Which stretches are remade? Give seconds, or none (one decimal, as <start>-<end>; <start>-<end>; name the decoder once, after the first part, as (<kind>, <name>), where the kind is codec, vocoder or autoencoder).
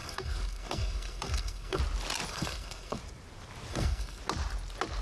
0.0-1.8 (codec, SNAC); 2.3-3.0; 3.7-4.2